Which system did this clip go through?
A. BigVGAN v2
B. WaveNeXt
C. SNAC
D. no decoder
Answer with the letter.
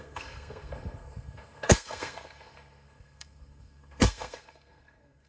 C